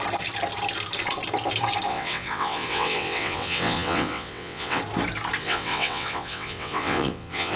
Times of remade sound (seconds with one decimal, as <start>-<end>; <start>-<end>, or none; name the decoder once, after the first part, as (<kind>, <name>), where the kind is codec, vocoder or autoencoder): 1.9-4.8 (vocoder, WaveNeXt); 5.4-7.6